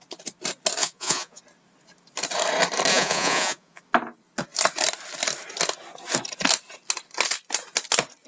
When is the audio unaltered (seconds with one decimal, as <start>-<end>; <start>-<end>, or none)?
0.0-0.8; 1.4-2.9; 3.8-8.3

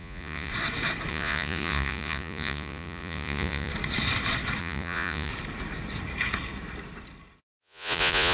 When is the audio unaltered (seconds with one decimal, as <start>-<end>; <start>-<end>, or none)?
0.5-1.1; 3.7-4.6; 5.3-7.4

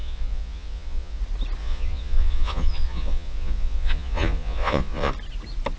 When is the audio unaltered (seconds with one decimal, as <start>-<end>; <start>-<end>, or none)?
1.2-1.6; 5.1-5.8

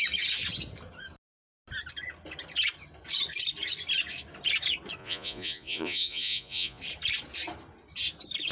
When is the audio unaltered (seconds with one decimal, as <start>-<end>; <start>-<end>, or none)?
0.0-5.0; 6.8-8.5